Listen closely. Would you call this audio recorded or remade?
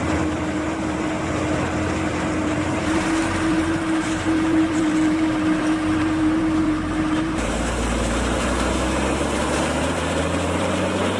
remade